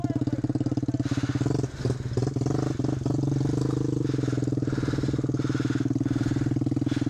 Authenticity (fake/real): real